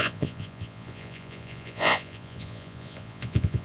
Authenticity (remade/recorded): remade